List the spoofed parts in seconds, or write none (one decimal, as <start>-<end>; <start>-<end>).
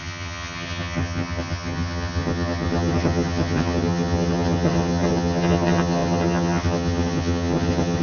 0.0-8.0